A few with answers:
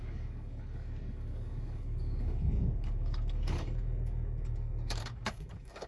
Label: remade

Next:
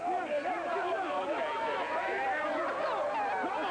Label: recorded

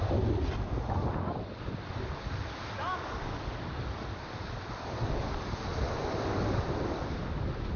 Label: recorded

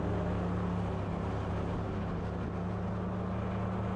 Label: recorded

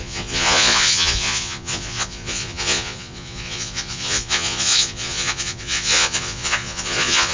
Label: remade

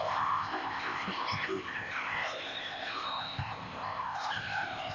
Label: remade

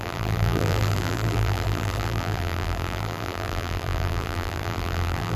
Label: remade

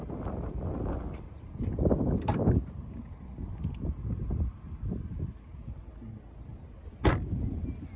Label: recorded